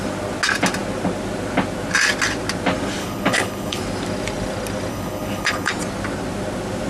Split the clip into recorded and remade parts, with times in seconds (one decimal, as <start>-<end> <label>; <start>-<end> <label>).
0.0-3.0 recorded; 3.0-3.8 remade; 3.8-4.9 recorded; 4.9-5.7 remade; 5.7-6.9 recorded